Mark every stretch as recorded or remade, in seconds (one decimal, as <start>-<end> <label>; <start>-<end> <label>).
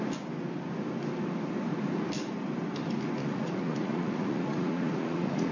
0.0-3.2 recorded; 3.2-5.5 remade